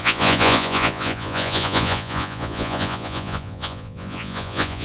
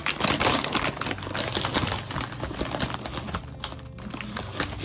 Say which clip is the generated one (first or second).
first